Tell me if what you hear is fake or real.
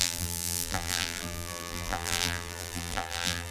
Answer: fake